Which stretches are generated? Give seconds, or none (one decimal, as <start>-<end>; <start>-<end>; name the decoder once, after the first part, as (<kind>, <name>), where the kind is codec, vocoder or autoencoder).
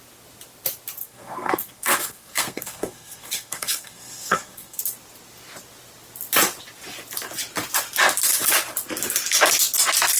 1.0-4.8 (codec, SNAC)